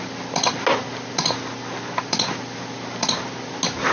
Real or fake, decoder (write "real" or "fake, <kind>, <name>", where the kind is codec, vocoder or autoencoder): real